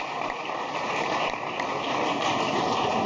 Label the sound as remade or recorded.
recorded